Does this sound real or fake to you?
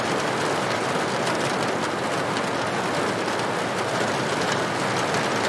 real